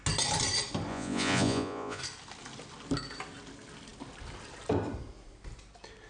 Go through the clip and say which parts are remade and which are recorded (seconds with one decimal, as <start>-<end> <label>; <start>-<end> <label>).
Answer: 0.0-0.9 recorded; 0.9-2.0 remade; 2.0-6.1 recorded